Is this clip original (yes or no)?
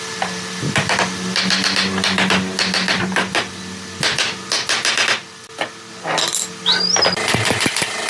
yes